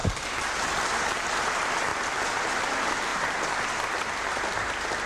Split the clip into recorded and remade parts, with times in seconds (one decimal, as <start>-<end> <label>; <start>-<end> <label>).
0.0-1.9 recorded; 1.9-2.5 remade; 2.5-3.1 recorded; 3.1-4.5 remade; 4.5-5.1 recorded